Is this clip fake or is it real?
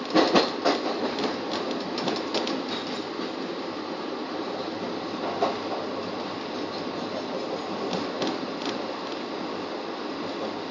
real